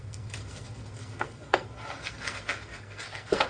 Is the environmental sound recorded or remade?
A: remade